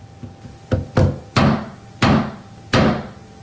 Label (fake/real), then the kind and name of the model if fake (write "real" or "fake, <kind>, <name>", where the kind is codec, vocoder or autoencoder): real